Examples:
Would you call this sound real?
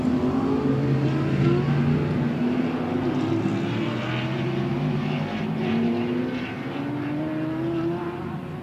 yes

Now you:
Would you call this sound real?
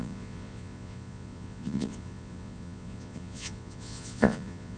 no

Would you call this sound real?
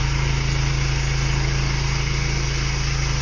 yes